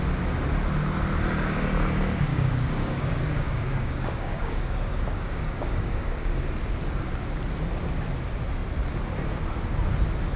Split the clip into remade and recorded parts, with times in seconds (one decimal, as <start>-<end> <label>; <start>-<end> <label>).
0.0-2.3 recorded; 2.3-6.4 remade; 6.4-10.4 recorded